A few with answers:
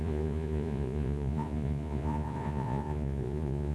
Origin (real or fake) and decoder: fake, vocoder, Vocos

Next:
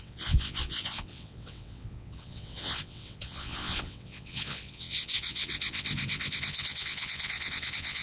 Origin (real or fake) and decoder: fake, vocoder, WaveNeXt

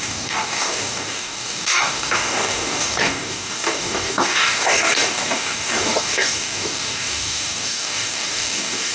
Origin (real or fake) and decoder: fake, codec, DAC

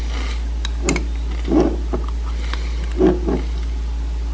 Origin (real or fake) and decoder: real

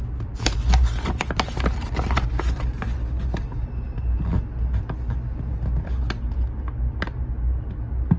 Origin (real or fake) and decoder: real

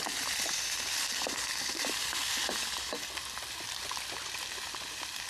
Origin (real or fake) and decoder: fake, vocoder, BigVGAN v2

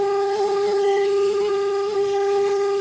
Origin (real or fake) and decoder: fake, codec, SNAC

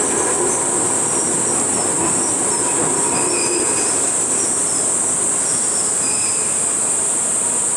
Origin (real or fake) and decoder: real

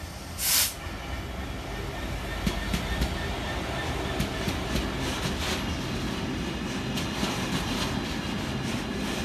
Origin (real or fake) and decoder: real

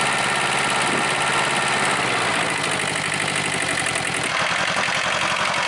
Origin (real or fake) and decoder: real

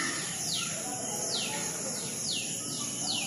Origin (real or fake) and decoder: real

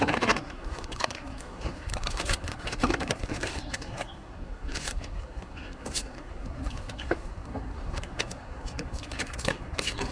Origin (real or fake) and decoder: fake, codec, SNAC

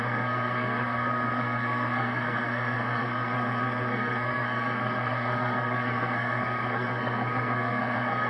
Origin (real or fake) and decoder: fake, codec, SNAC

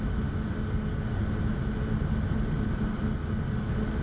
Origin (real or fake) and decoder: real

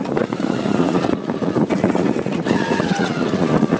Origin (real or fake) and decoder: fake, vocoder, Vocos